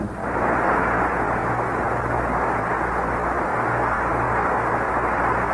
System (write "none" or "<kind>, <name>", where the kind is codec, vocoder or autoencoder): none